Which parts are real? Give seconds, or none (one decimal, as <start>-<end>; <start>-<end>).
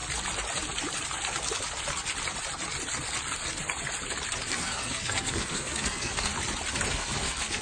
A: 0.0-4.5; 6.3-6.9